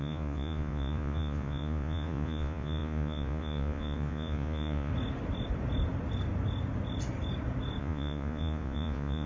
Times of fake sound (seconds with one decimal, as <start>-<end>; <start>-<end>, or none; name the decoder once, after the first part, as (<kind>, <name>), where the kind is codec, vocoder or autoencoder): 0.0-4.9 (vocoder, Vocos); 7.8-9.3